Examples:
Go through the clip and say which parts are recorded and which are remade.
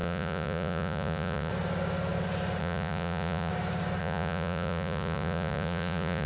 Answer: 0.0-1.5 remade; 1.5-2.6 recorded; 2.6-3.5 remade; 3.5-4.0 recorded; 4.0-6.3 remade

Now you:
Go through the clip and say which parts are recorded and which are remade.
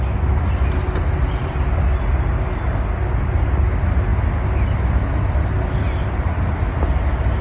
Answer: 0.0-7.4 recorded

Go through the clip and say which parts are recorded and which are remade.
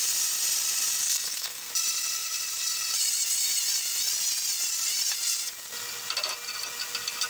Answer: 0.0-1.0 recorded; 1.0-1.7 remade; 1.7-7.3 recorded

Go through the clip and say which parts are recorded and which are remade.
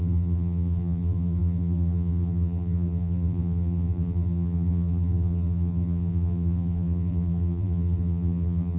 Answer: 0.0-8.8 remade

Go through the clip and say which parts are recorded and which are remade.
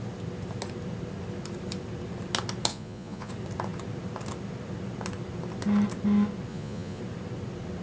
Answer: 0.0-2.7 recorded; 2.7-3.3 remade; 3.3-6.5 recorded; 6.5-7.0 remade; 7.0-7.8 recorded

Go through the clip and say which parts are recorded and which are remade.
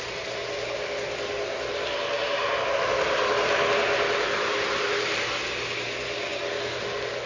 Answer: 0.0-7.3 recorded